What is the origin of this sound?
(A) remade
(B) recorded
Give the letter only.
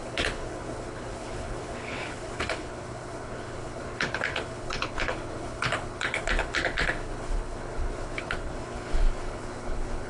A